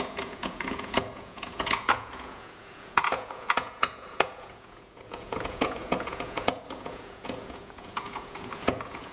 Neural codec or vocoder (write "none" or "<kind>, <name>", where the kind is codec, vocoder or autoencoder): vocoder, Vocos